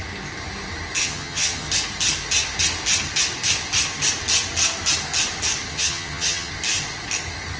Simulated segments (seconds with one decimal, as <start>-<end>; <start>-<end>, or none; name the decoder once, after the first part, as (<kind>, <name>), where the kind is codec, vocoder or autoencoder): 1.0-1.7 (vocoder, HiFi-GAN); 5.7-6.5

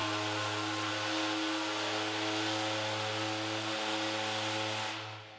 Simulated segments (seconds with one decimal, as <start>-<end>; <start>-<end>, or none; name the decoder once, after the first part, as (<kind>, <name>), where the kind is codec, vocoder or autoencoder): none

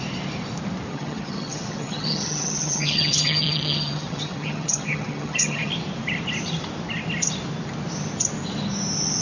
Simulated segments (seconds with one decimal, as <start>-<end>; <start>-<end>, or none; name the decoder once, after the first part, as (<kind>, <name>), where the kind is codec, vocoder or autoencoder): 0.9-5.7 (vocoder, HiFi-GAN)

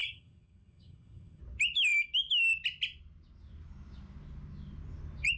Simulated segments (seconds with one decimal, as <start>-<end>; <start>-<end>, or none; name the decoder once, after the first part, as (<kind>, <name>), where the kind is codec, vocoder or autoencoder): 0.0-1.4 (vocoder, HiFi-GAN)

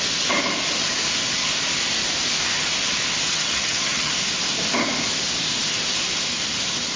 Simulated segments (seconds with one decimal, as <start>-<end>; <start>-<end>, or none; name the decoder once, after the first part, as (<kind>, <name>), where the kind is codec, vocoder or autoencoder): 3.3-4.1 (vocoder, HiFi-GAN)

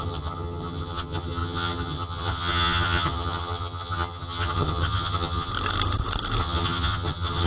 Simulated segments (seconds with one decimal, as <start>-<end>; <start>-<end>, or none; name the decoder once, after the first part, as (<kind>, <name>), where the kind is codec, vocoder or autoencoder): 0.0-5.5 (vocoder, HiFi-GAN); 6.4-7.5